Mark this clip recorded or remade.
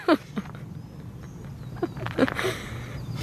recorded